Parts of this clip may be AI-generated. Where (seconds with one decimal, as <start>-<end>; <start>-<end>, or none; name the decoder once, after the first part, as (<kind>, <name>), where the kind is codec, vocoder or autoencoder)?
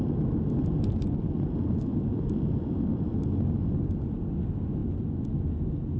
1.9-3.2 (vocoder, BigVGAN v2); 4.8-6.0